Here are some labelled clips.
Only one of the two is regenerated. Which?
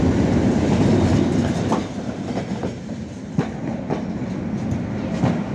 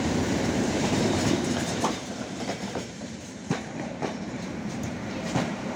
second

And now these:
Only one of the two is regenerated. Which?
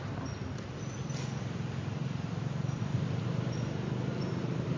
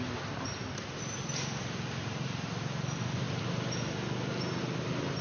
first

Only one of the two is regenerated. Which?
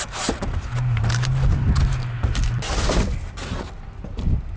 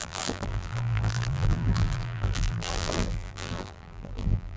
second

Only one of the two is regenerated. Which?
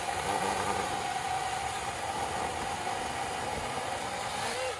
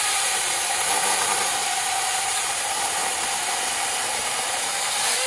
second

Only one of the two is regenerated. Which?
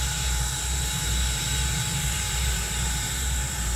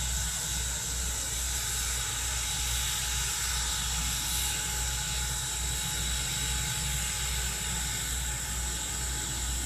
first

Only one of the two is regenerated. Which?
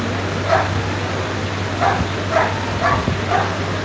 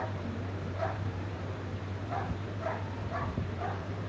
second